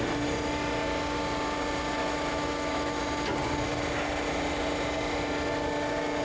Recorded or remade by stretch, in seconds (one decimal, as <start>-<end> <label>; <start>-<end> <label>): 0.0-2.0 recorded; 2.0-3.0 remade; 3.0-6.2 recorded